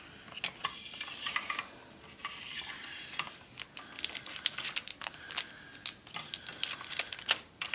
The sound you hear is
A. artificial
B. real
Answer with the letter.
B